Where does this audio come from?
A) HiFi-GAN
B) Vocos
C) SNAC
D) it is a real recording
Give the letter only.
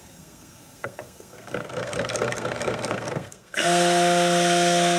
C